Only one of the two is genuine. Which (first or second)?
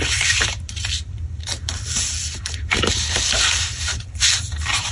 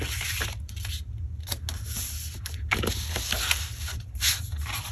second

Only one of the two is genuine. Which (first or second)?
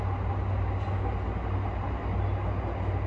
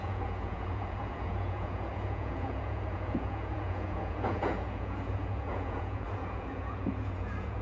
first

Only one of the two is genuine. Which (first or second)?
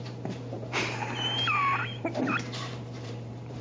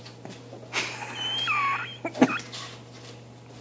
second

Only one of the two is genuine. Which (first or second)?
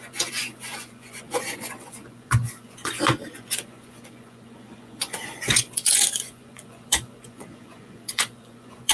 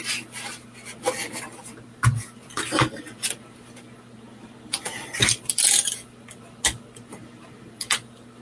second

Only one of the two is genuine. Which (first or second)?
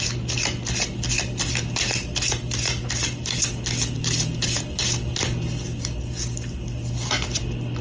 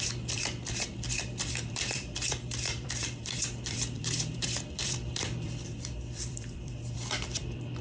first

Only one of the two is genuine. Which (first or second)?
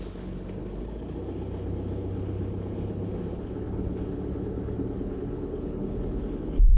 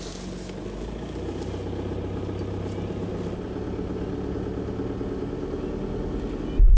second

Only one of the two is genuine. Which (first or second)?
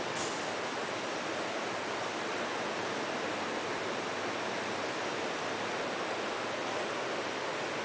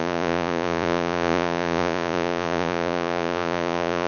first